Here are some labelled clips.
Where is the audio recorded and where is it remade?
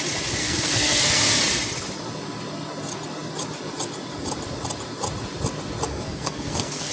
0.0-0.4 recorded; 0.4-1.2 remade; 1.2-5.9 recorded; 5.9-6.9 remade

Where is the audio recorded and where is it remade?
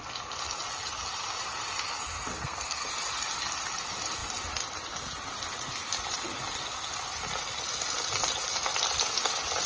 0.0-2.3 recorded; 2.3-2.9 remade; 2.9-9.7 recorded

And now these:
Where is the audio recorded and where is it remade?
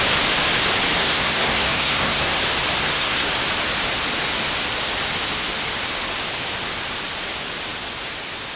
0.0-1.0 recorded; 1.0-2.4 remade; 2.4-2.8 recorded; 2.8-3.3 remade; 3.3-8.6 recorded